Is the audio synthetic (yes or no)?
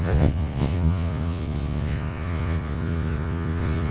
yes